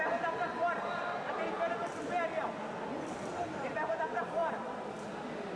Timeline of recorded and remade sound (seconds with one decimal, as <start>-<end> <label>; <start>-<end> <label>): 0.0-5.6 recorded